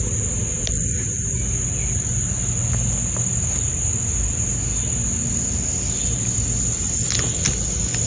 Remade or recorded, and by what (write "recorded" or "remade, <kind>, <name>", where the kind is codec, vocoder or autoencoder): recorded